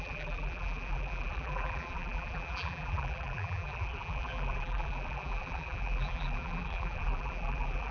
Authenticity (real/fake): fake